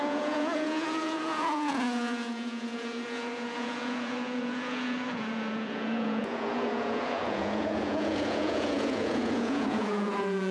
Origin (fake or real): fake